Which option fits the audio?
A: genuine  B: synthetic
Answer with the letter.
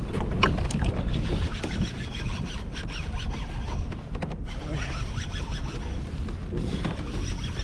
A